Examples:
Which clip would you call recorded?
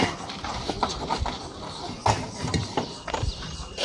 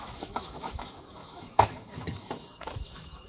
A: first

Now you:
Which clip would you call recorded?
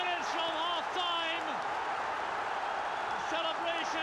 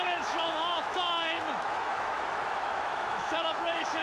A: first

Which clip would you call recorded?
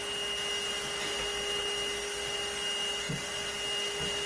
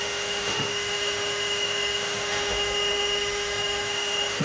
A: first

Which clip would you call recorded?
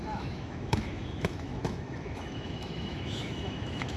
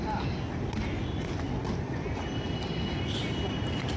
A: second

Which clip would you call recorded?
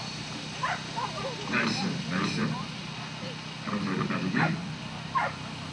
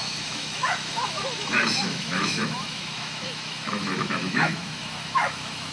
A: first